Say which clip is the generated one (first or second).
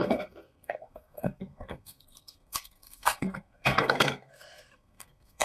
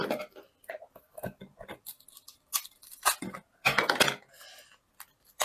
first